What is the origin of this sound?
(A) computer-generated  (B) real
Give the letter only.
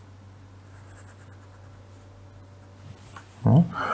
B